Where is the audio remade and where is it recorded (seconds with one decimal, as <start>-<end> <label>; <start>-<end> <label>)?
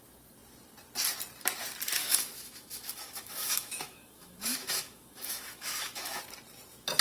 0.0-2.0 recorded; 2.0-6.2 remade; 6.2-7.0 recorded